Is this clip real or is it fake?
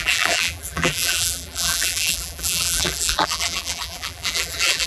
fake